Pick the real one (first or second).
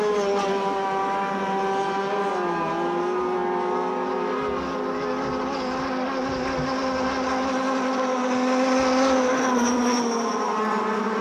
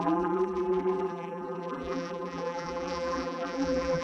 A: first